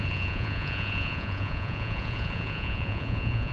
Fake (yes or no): yes